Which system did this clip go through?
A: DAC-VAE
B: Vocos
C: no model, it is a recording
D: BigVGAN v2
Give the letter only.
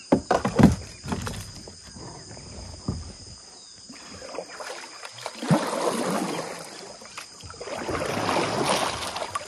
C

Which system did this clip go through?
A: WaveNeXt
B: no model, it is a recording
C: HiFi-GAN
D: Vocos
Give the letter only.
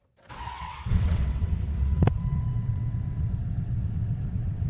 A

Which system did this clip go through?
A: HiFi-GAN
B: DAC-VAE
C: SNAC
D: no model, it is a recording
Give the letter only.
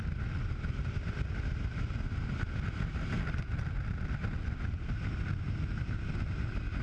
D